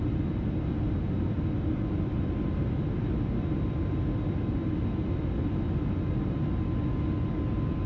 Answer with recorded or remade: recorded